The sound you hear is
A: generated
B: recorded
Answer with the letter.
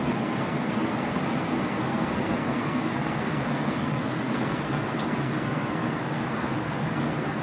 A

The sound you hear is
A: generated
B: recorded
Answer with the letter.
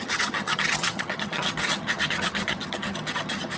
A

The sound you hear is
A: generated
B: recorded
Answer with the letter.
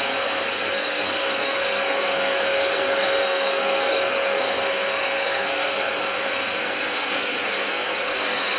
A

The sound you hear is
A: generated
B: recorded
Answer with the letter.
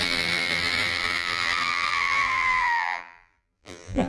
A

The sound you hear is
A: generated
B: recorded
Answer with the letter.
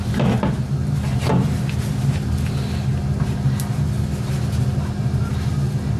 B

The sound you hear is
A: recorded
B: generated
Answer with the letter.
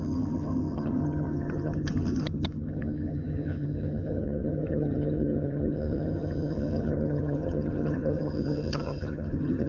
B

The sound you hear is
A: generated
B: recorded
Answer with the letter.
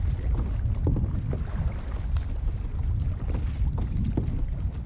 B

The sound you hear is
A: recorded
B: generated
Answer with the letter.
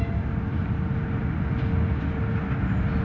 A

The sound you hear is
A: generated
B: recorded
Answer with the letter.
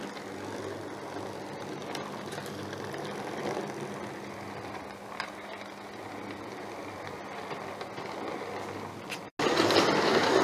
B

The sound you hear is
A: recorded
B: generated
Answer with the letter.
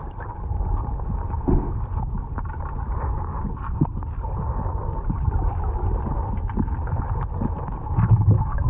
A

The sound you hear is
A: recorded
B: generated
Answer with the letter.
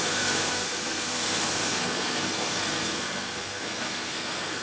B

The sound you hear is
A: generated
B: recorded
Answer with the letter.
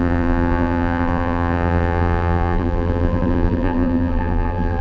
A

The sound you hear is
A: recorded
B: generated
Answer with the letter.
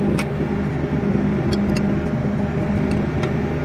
A